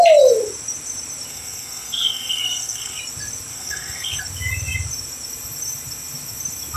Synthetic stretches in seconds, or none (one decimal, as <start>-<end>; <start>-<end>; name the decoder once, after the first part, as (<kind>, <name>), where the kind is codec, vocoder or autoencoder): 1.3-3.0 (codec, SNAC); 3.5-4.2